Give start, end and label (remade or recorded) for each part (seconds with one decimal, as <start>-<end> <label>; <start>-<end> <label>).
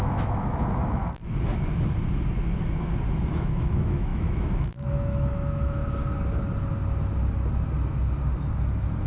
0.0-1.0 remade; 1.0-3.3 recorded; 3.3-5.8 remade; 5.8-9.1 recorded